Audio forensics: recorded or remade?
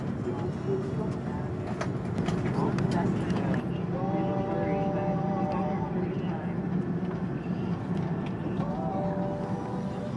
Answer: recorded